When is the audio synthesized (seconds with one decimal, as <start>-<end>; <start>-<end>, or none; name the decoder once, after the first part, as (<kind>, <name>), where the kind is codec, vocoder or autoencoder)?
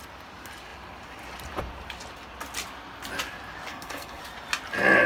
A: 3.7-4.2 (codec, SNAC)